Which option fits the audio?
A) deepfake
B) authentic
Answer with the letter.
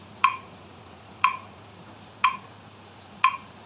A